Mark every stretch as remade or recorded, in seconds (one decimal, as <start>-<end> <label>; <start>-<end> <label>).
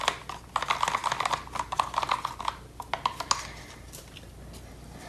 0.0-5.1 recorded